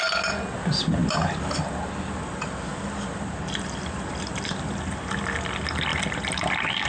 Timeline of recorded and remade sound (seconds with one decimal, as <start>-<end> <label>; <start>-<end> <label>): 0.0-1.0 recorded; 1.0-4.1 remade; 4.1-5.9 recorded; 5.9-6.9 remade